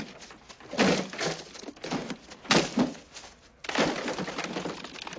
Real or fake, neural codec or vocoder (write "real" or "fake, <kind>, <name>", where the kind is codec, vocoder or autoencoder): real